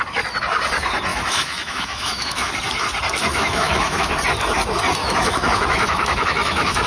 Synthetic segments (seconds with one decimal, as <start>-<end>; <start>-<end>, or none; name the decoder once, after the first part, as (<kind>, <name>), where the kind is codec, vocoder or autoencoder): 1.1-2.5 (autoencoder, DAC-VAE); 3.3-4.1; 5.0-6.9